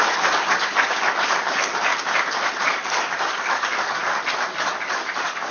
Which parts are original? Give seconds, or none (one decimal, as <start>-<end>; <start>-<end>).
1.9-2.6; 4.0-4.6